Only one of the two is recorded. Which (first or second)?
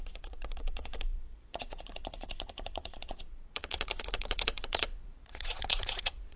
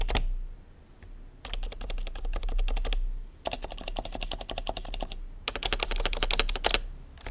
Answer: second